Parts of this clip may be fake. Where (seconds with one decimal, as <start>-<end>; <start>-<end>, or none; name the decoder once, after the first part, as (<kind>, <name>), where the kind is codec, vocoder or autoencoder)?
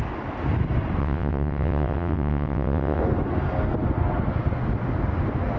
1.0-3.0 (vocoder, WaveNeXt)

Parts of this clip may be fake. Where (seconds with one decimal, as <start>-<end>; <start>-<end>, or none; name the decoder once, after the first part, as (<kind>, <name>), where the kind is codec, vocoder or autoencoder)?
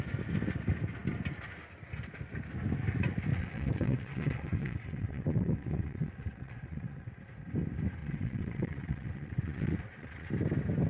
3.3-7.1 (vocoder, WaveNeXt); 8.0-10.3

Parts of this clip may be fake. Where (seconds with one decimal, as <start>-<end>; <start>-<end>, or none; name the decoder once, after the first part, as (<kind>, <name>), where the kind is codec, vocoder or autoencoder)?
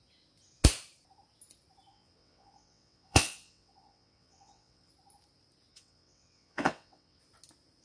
1.9-4.9 (vocoder, WaveNeXt); 5.7-7.2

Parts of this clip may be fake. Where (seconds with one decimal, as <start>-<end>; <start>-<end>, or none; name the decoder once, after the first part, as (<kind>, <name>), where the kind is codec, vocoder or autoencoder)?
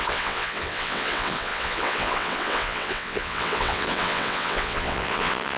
0.0-5.6 (vocoder, WaveNeXt)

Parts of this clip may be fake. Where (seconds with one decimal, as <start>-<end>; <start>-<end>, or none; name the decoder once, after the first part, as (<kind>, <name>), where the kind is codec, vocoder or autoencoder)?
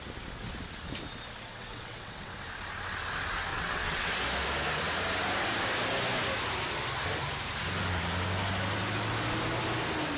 1.5-2.3 (vocoder, WaveNeXt); 3.5-4.1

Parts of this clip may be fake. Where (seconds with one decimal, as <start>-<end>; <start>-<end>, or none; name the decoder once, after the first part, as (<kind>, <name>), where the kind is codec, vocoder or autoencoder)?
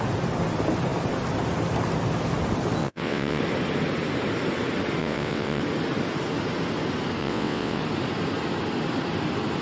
2.8-3.4 (vocoder, WaveNeXt); 5.0-5.6; 7.2-7.8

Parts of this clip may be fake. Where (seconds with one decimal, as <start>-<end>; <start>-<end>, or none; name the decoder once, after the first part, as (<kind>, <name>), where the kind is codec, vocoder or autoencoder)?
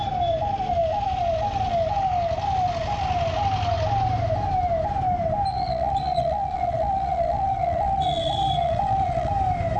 5.5-9.3 (vocoder, WaveNeXt)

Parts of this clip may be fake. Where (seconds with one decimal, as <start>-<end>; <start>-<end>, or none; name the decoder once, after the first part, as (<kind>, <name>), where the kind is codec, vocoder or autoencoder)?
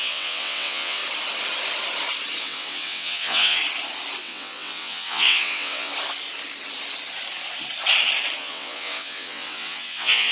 0.0-1.0 (vocoder, WaveNeXt); 2.4-3.6; 4.2-5.9; 8.4-10.3